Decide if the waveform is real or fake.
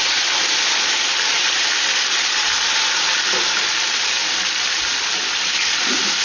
real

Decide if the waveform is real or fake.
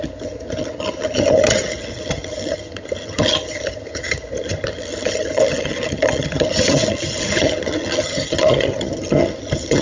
fake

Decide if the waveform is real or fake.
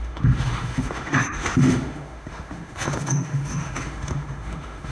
fake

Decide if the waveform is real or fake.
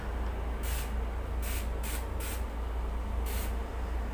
real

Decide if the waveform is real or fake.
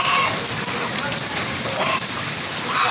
real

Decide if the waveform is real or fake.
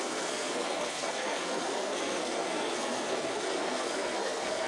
fake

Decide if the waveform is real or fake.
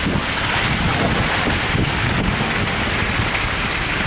real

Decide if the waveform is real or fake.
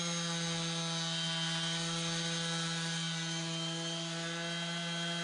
real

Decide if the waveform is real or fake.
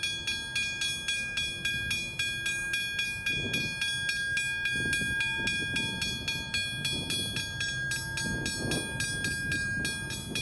real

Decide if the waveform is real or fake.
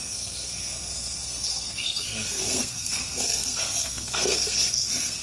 fake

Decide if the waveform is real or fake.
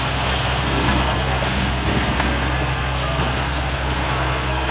fake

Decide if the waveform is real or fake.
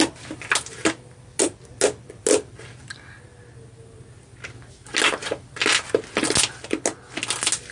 real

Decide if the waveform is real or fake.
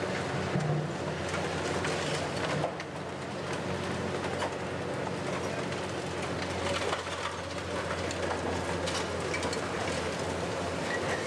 real